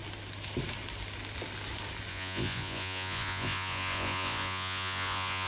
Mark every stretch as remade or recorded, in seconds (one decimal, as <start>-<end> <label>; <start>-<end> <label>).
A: 0.0-2.1 recorded; 2.1-5.5 remade